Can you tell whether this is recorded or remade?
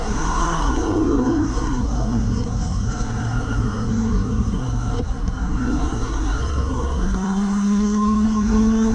remade